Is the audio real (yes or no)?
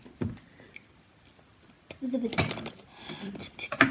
no